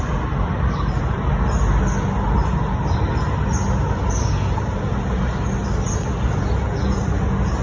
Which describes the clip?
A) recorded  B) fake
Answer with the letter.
A